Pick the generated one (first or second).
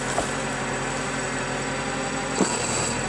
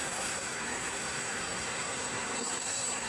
second